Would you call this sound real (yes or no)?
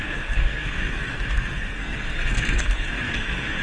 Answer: no